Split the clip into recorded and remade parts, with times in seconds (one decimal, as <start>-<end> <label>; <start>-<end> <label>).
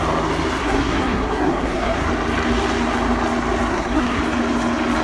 0.0-0.6 recorded; 0.6-2.1 remade; 2.1-3.7 recorded; 3.7-4.2 remade; 4.2-5.0 recorded